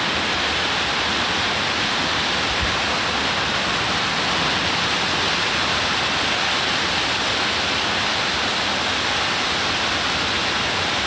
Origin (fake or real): real